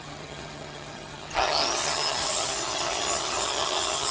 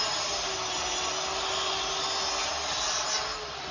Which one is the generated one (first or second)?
first